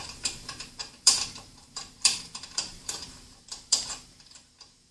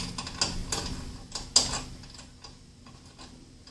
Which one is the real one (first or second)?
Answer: second